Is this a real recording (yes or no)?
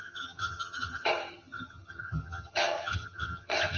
no